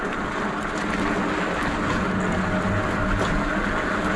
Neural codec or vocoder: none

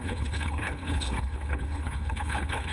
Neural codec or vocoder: codec, HILCodec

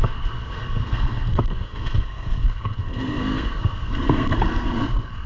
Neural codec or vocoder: codec, SNAC